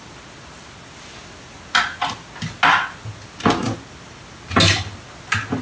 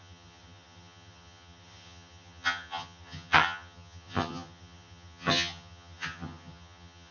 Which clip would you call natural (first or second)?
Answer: first